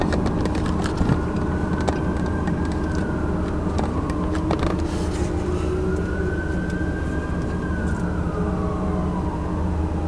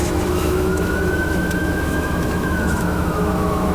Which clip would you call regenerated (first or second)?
second